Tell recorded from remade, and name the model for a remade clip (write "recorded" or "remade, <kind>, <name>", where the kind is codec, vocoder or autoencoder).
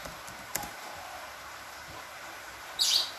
recorded